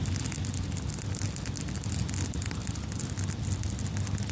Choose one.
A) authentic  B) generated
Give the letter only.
A